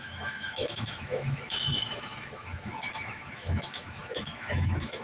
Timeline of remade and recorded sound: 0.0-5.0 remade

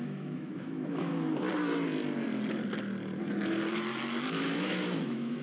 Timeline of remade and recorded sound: 0.0-1.1 remade; 1.1-4.3 recorded; 4.3-5.4 remade

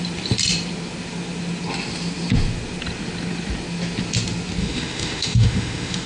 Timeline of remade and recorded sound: 0.0-4.6 recorded; 4.6-6.1 remade

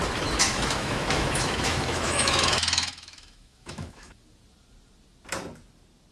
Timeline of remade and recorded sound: 0.0-0.4 recorded; 0.4-4.1 remade; 4.1-6.1 recorded

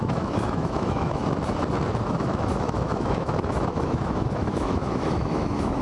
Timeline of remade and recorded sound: 0.0-1.2 remade; 1.2-1.9 recorded; 1.9-5.8 remade

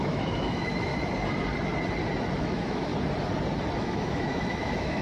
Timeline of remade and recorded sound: 0.0-0.9 remade; 0.9-2.4 recorded; 2.4-2.9 remade; 2.9-3.8 recorded; 3.8-5.0 remade